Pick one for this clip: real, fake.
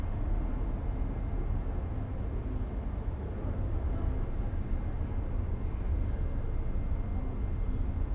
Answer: real